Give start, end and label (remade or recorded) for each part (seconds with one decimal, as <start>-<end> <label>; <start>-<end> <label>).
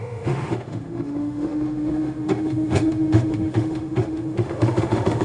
0.0-5.2 remade